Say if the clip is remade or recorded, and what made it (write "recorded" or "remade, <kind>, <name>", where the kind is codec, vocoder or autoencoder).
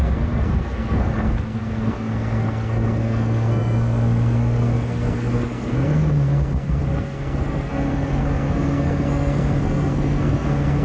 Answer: remade, codec, SNAC